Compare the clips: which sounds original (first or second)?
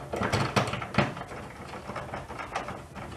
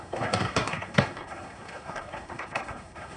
first